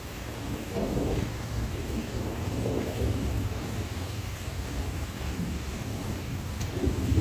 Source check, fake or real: fake